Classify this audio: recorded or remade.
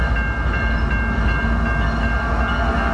recorded